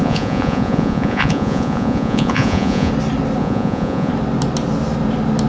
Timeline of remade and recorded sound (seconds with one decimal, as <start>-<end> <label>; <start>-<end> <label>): 0.0-2.9 remade; 2.9-3.4 recorded; 3.4-4.1 remade; 4.1-5.5 recorded

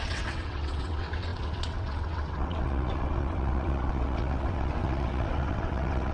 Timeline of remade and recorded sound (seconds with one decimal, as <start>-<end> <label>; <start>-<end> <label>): 0.0-6.1 remade